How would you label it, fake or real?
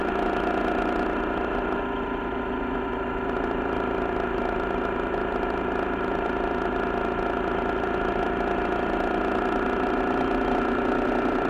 real